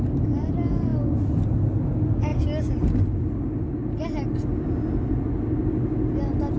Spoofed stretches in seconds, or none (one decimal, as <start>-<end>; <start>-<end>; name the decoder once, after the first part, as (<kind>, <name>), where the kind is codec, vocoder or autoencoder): none